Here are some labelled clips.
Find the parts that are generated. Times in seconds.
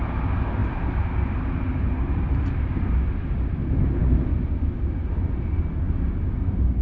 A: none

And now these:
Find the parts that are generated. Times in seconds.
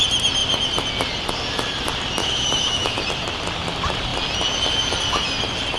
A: 2.2-3.0 (autoencoder, DAC-VAE)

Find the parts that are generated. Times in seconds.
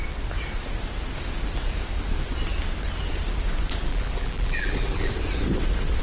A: 3.9-5.1 (vocoder, BigVGAN v2)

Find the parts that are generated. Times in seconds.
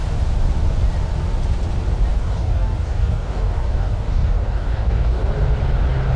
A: 2.1-5.3 (codec, DAC)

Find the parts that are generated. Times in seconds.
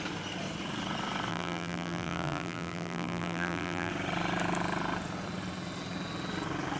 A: 1.3-3.9 (vocoder, BigVGAN v2)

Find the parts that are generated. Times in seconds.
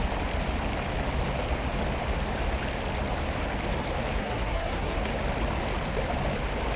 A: 4.2-5.1 (codec, SNAC)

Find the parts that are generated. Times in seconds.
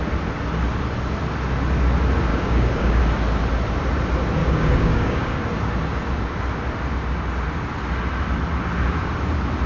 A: 2.3-3.0 (codec, DAC); 4.4-5.4